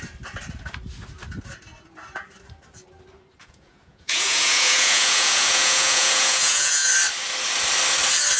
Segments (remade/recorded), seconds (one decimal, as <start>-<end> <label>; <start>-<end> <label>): 0.0-3.4 recorded; 3.4-6.9 remade; 6.9-8.4 recorded